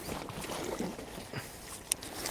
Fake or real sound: real